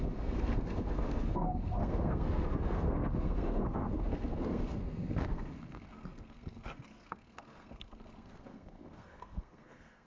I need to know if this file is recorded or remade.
remade